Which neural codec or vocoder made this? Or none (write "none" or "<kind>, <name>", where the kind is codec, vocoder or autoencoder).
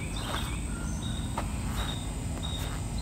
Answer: none